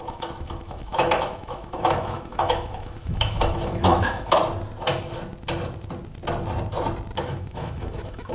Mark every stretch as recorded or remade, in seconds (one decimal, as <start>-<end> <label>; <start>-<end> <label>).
0.0-4.4 remade; 4.4-7.3 recorded; 7.3-8.3 remade